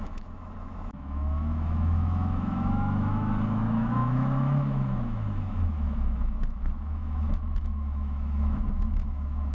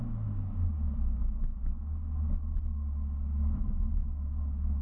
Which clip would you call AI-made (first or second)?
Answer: first